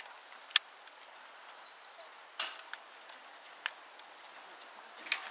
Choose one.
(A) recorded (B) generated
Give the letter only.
A